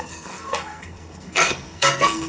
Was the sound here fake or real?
fake